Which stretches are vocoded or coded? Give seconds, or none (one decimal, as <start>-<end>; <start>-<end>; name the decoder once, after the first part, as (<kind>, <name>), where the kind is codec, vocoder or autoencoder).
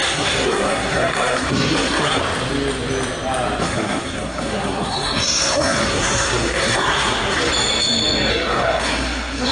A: 0.0-2.2 (codec, SNAC); 3.6-7.5; 8.3-9.5